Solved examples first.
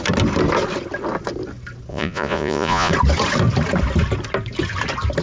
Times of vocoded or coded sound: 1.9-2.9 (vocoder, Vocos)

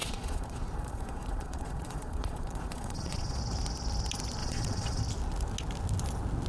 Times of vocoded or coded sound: 0.0-3.4 (vocoder, Vocos); 4.4-5.0

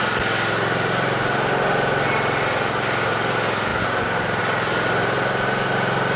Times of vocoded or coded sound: none

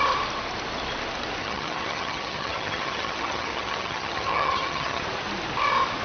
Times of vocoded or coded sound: 1.4-5.0 (vocoder, HiFi-GAN)

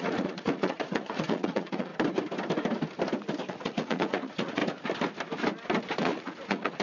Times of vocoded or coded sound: 0.0-1.9 (vocoder, Vocos); 3.5-4.6; 6.0-6.8

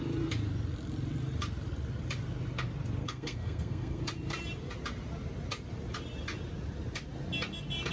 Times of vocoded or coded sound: 3.0-4.0 (codec, SNAC)